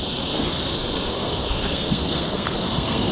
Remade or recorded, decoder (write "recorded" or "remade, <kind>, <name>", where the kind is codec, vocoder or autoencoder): remade, codec, SNAC